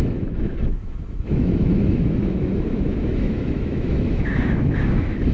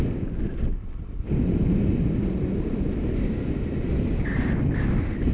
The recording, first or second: second